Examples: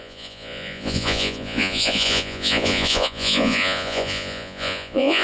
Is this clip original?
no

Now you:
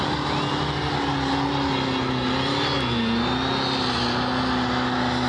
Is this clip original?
yes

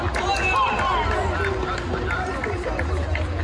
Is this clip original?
yes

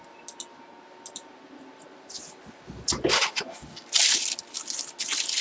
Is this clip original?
yes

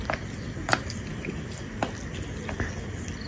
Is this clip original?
yes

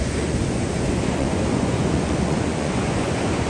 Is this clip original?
no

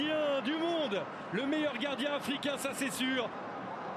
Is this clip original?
yes